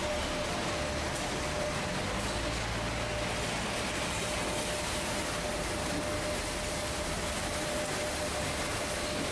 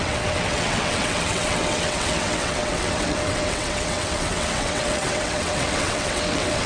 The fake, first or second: second